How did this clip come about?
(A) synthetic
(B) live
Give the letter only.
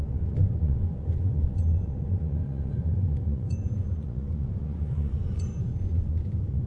A